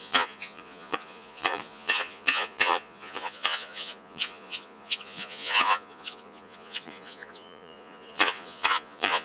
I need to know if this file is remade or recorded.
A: remade